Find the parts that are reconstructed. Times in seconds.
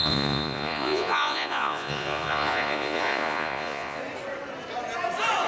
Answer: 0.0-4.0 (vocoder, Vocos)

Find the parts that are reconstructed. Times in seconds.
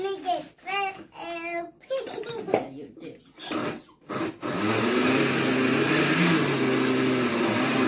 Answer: 3.6-4.1 (vocoder, WaveNeXt)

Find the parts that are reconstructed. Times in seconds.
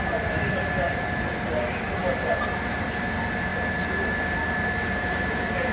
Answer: none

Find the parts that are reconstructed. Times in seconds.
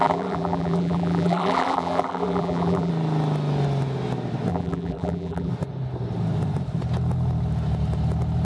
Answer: 0.0-2.9 (vocoder, BigVGAN v2); 4.5-5.5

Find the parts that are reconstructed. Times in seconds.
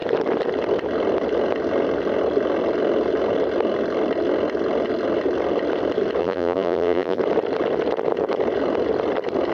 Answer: 6.2-7.2 (vocoder, BigVGAN v2)